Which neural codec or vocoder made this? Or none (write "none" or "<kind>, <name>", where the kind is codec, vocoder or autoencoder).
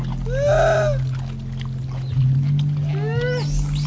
none